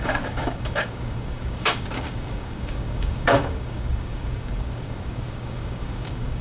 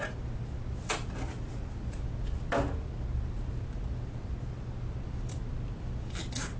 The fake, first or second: first